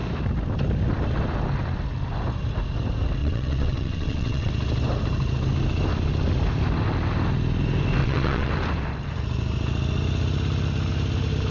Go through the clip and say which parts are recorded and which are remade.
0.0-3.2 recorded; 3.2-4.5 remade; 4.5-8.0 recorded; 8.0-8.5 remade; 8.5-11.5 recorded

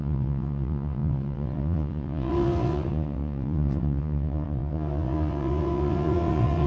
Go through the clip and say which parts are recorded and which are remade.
0.0-6.7 remade

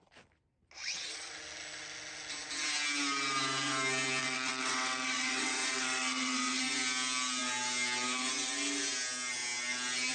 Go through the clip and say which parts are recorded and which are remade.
0.0-0.8 recorded; 0.8-1.3 remade; 1.3-4.2 recorded; 4.2-6.6 remade; 6.6-10.1 recorded

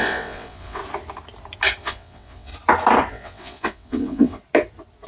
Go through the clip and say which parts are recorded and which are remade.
0.0-0.8 remade; 0.8-1.8 recorded; 1.8-2.5 remade; 2.5-3.1 recorded; 3.1-4.4 remade; 4.4-5.1 recorded

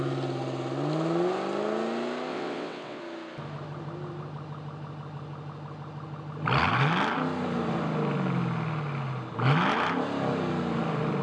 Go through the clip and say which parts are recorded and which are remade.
0.0-2.3 recorded; 2.3-3.0 remade; 3.0-11.2 recorded